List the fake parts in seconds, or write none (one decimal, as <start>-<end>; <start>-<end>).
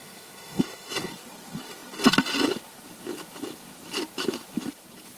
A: 0.0-1.1